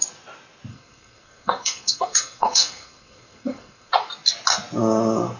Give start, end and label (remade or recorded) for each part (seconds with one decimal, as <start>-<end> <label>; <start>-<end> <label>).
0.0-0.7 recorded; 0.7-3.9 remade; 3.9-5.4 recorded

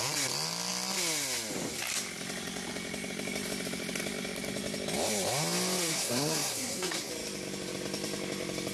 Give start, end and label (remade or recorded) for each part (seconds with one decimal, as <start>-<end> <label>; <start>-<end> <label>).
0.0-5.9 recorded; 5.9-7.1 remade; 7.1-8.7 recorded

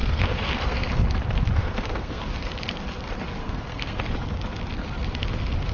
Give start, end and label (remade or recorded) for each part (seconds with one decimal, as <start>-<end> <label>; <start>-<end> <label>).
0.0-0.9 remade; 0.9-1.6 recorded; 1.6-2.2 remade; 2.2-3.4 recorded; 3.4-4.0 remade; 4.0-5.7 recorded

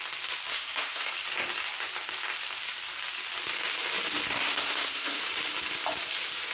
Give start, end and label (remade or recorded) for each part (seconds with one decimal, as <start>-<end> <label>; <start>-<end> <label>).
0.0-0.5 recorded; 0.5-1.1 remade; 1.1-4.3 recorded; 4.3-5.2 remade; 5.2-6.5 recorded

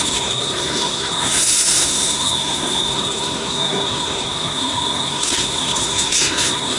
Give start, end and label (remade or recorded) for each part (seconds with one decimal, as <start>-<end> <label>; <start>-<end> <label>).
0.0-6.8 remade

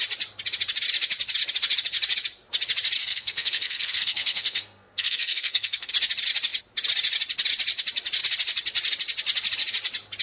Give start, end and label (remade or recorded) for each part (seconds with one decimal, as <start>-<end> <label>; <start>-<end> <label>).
0.0-3.0 recorded; 3.0-5.9 remade; 5.9-10.2 recorded